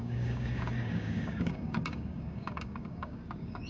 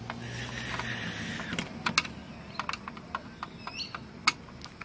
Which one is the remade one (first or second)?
first